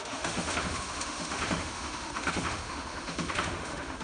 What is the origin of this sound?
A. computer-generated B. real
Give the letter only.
A